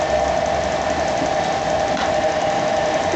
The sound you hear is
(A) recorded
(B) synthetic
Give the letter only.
A